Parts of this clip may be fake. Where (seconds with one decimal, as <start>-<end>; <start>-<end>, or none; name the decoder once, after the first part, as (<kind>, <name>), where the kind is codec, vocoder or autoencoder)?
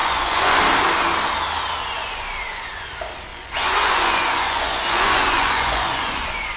0.0-0.6 (vocoder, Vocos); 1.8-2.9; 3.3-6.6